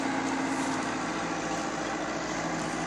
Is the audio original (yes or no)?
yes